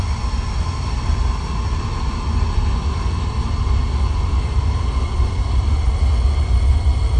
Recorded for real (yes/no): yes